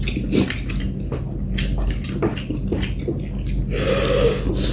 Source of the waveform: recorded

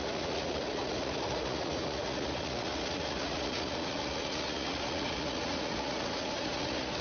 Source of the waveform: remade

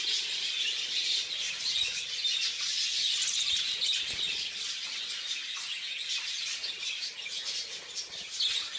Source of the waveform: recorded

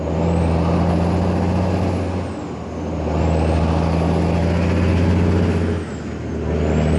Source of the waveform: recorded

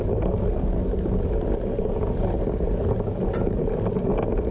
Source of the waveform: recorded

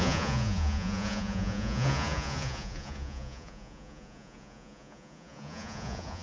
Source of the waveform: remade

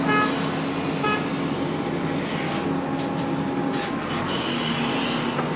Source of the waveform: recorded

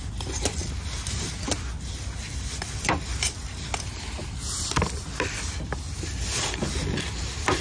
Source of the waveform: recorded